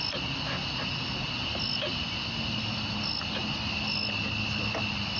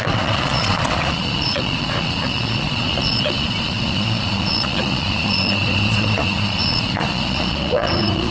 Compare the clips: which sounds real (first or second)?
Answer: first